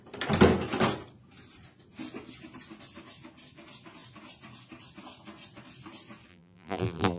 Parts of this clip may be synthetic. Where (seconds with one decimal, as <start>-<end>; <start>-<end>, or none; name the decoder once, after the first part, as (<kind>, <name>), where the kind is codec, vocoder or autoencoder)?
6.3-7.2 (vocoder, BigVGAN v2)